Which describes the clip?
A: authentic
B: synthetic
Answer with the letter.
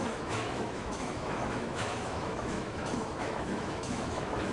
B